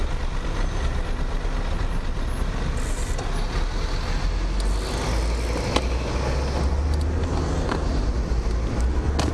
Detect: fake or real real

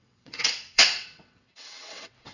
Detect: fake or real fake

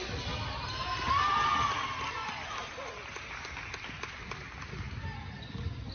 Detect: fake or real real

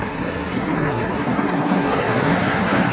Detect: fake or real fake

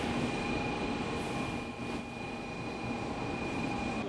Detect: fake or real real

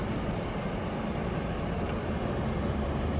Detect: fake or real real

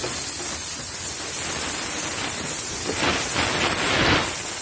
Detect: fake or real real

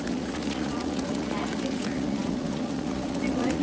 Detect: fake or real fake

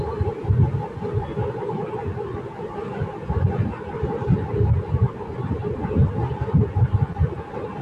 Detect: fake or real real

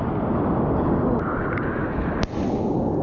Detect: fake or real real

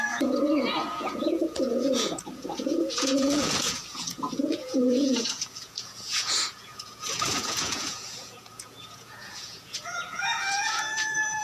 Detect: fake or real fake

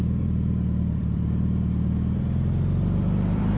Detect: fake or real fake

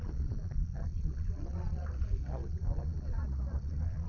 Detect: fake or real fake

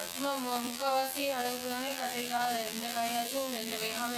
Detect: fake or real fake